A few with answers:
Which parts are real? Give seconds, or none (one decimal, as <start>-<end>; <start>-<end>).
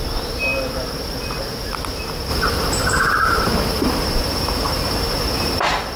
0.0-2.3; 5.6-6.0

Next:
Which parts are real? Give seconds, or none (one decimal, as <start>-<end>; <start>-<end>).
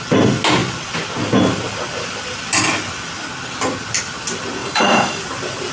0.0-4.6; 5.2-5.7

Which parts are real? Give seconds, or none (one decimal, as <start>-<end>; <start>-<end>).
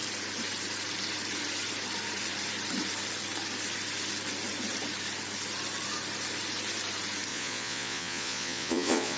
0.0-7.3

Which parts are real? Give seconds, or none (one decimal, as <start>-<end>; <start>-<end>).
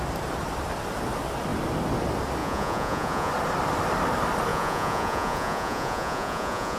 0.0-2.4; 3.3-4.5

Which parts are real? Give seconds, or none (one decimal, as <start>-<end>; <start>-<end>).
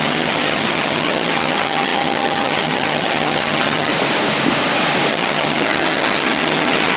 3.9-5.1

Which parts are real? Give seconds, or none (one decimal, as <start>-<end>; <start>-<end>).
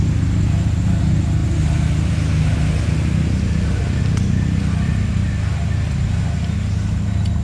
0.0-7.4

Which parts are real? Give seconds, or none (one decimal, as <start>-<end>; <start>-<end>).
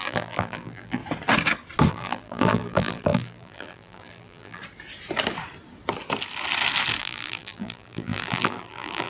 1.0-1.9; 4.6-7.0